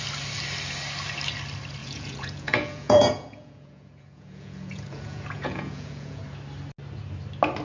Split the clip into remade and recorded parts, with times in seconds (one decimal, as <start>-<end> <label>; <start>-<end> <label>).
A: 0.0-1.8 recorded; 1.8-6.2 remade; 6.2-7.6 recorded